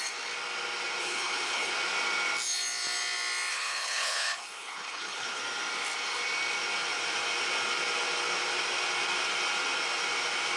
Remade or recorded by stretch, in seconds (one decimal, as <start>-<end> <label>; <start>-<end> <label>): 0.0-1.0 recorded; 1.0-1.7 remade; 1.7-3.5 recorded; 3.5-5.4 remade; 5.4-10.6 recorded